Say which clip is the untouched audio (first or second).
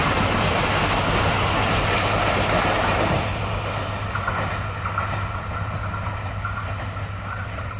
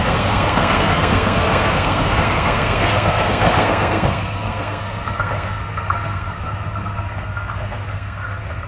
first